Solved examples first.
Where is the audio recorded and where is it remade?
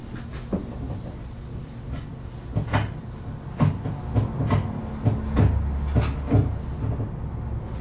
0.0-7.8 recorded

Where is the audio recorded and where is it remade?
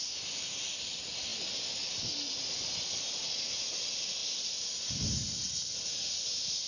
0.0-6.7 recorded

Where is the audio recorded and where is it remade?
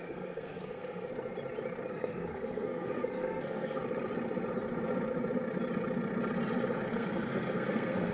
0.0-1.1 remade; 1.1-1.9 recorded; 1.9-3.8 remade; 3.8-6.9 recorded; 6.9-8.1 remade